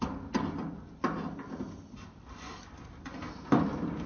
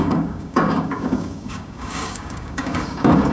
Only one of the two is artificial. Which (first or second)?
second